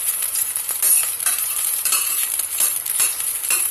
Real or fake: fake